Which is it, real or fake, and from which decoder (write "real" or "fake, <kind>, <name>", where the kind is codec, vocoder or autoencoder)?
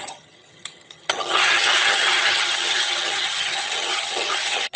fake, vocoder, HiFi-GAN